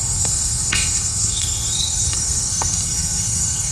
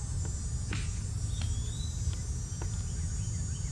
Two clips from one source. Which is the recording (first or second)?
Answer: second